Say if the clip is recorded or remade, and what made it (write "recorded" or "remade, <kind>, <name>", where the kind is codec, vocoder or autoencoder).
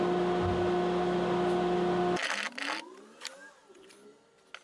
recorded